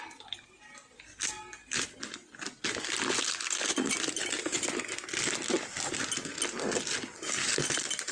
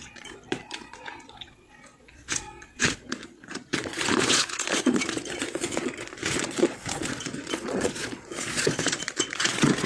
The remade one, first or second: second